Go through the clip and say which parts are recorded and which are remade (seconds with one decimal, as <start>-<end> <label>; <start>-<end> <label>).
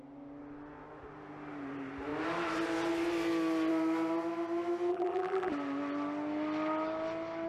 0.0-4.9 recorded; 4.9-5.5 remade; 5.5-7.5 recorded